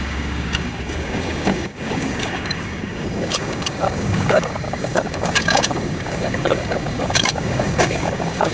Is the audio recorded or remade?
remade